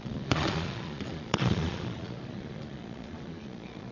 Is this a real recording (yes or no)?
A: no